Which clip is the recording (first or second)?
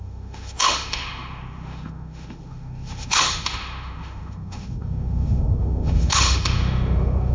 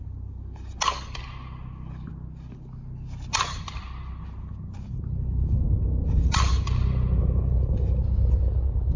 second